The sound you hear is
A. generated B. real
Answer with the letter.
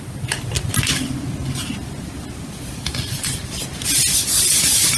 B